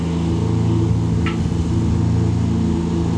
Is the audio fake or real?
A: real